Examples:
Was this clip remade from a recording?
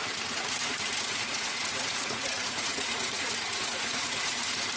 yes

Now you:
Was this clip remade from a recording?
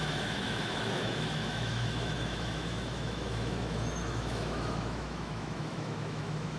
yes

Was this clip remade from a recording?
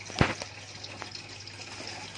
no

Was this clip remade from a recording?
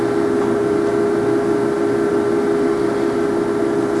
no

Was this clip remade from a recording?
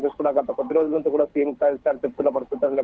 yes